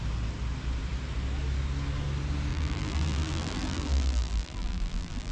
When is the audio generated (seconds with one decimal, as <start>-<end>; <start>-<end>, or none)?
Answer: 2.5-5.3

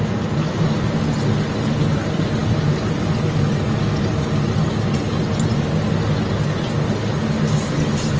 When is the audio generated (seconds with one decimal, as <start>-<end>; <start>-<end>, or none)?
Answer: none

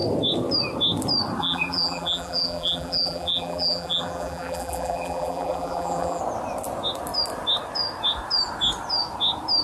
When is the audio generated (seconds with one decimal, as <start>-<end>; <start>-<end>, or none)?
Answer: 1.4-6.2